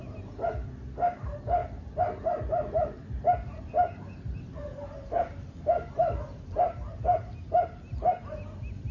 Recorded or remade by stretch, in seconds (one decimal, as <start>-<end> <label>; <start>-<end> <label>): 0.0-8.9 recorded